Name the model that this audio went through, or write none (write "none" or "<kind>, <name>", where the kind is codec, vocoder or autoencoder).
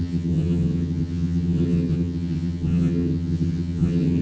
vocoder, HiFi-GAN